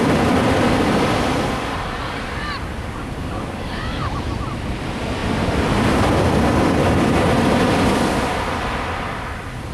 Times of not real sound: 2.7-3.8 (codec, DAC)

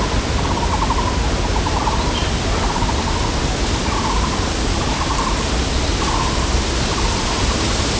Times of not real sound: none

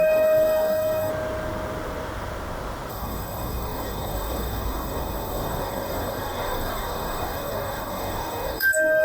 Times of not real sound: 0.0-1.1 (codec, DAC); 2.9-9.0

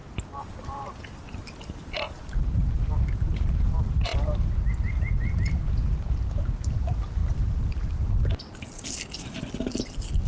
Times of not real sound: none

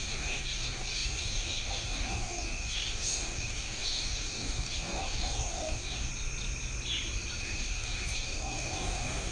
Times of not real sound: 0.0-6.1 (codec, DAC); 7.4-9.3